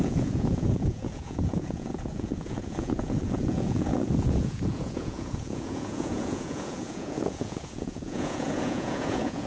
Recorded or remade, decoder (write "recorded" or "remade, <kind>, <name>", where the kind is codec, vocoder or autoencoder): remade, vocoder, Vocos